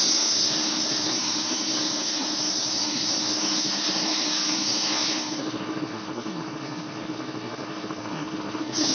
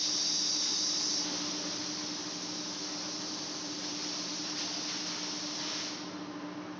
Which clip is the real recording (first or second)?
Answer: second